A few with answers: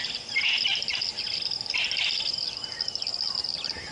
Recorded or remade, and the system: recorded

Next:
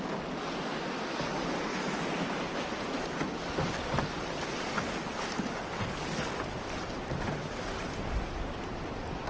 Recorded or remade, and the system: recorded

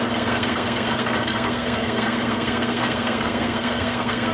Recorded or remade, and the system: remade, codec, SNAC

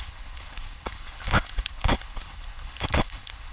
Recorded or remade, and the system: remade, codec, HILCodec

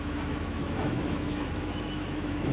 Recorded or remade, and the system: remade, autoencoder, DAC-VAE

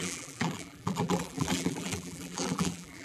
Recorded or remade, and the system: remade, vocoder, BigVGAN v2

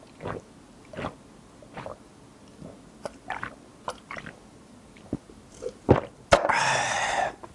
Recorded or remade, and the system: recorded